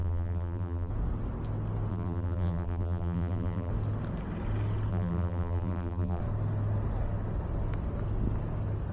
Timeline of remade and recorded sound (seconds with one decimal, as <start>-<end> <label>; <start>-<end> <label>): 0.0-0.9 remade; 0.9-1.9 recorded; 1.9-3.7 remade; 3.7-4.9 recorded; 4.9-6.2 remade; 6.2-8.9 recorded